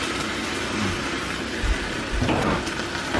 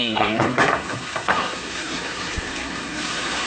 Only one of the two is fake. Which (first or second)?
second